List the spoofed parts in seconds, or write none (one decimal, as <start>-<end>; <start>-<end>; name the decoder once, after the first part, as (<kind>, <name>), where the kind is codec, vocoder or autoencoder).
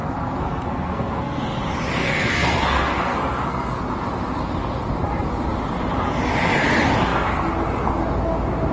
0.0-1.4 (codec, SNAC); 2.0-3.8